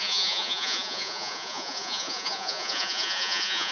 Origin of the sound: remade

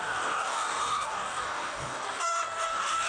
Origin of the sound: remade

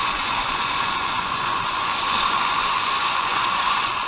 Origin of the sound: remade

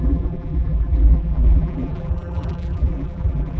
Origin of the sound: remade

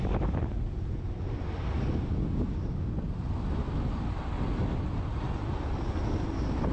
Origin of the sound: recorded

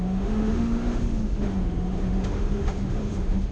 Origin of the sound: remade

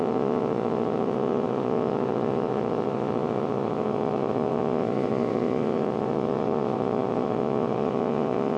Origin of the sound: remade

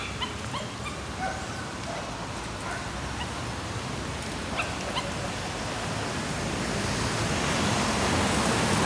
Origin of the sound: recorded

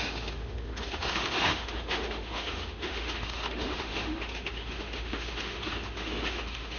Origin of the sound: remade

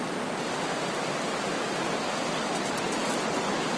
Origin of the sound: recorded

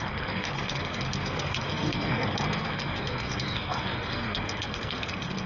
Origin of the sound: remade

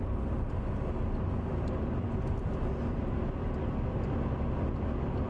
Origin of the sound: recorded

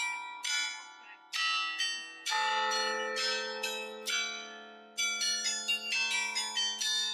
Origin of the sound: recorded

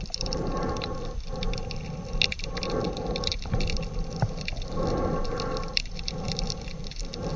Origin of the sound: recorded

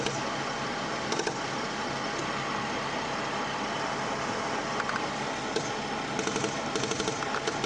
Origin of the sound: recorded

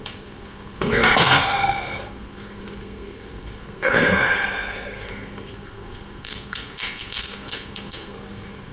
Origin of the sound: remade